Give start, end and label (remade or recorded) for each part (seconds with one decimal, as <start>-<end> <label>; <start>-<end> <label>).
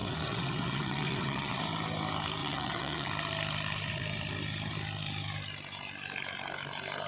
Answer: 0.0-1.6 remade; 1.6-2.4 recorded; 2.4-3.1 remade; 3.1-7.1 recorded